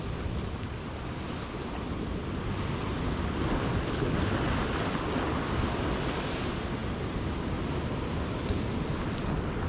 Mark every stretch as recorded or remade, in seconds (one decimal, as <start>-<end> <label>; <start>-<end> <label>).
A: 0.0-9.7 recorded